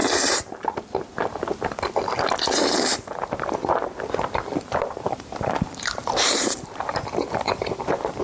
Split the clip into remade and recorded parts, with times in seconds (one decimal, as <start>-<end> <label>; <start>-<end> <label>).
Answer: 0.0-4.7 recorded; 4.7-8.2 remade